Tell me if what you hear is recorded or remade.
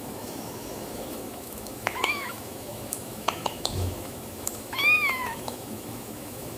remade